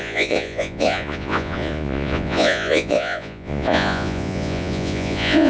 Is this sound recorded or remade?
remade